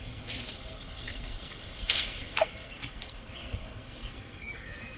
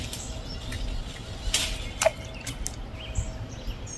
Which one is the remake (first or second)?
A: first